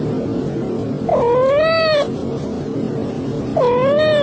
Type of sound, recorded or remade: recorded